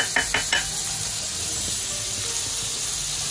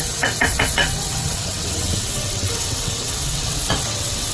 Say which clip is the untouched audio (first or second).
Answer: first